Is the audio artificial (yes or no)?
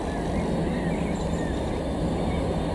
no